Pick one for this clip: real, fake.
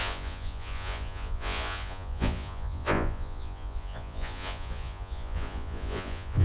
fake